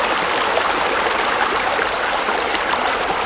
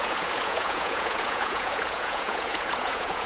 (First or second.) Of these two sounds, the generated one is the second